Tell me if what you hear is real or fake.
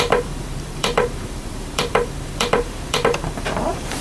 fake